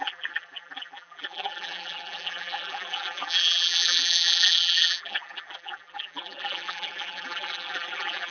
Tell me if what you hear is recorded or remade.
remade